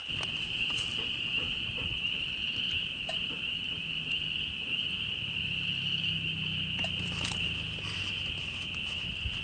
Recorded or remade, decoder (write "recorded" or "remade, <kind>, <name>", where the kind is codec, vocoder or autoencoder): recorded